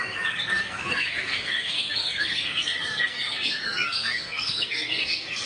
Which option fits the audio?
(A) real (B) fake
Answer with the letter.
B